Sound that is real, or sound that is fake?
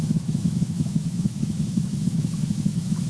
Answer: fake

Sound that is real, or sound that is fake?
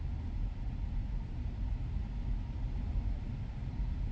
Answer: real